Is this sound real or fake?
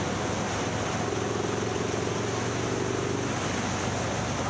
real